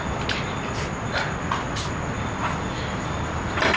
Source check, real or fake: real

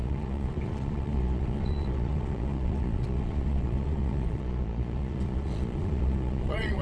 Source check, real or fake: fake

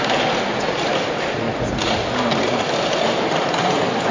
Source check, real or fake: real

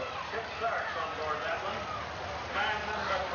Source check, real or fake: real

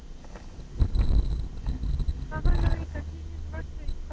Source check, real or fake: real